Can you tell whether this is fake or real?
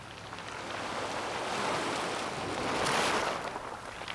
real